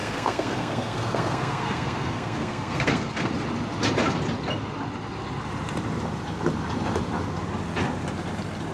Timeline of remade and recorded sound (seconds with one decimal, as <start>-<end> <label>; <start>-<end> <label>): 0.0-3.3 remade; 3.3-8.7 recorded